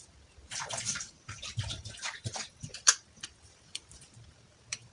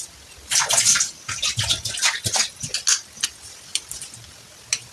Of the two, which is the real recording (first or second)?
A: second